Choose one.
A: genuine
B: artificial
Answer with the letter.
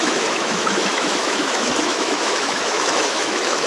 B